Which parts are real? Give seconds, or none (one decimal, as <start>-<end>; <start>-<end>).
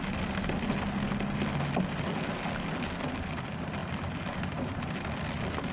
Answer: 0.0-5.7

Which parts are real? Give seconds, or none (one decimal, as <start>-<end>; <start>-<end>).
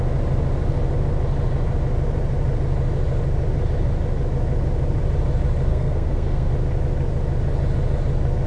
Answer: 0.0-5.7; 6.5-8.5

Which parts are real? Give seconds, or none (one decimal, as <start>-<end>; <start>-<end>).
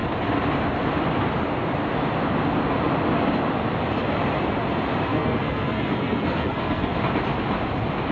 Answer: 0.0-5.1; 6.9-8.1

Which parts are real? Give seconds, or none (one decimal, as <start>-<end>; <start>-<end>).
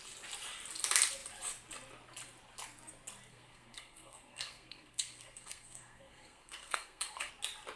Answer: 0.0-3.3; 7.3-7.8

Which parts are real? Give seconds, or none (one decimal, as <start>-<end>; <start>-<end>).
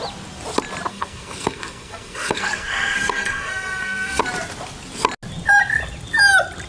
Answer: 0.0-0.9; 4.2-6.7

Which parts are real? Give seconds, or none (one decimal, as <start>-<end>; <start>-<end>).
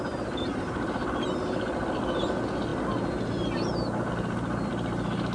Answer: 0.0-5.3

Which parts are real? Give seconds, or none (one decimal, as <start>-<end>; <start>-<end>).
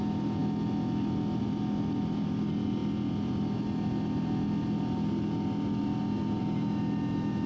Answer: 0.0-7.5